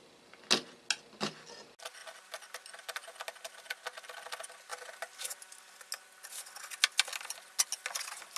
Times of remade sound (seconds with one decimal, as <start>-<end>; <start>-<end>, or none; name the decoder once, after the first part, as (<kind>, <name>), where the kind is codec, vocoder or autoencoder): none